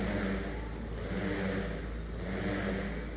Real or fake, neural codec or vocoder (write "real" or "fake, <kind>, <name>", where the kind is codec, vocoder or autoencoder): real